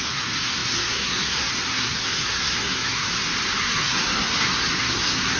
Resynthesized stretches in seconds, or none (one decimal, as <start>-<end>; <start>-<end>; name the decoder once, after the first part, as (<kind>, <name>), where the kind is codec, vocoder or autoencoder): 0.0-3.1 (codec, SNAC); 3.6-5.4